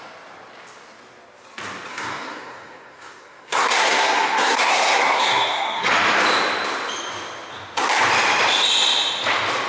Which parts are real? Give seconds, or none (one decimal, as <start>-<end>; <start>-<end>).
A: 0.0-1.9; 5.9-9.7